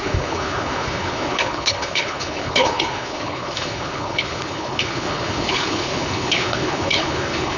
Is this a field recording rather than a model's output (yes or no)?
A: no